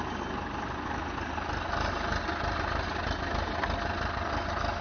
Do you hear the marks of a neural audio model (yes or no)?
no